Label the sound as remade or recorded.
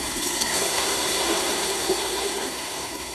remade